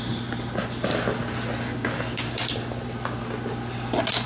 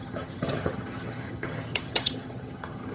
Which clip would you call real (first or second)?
first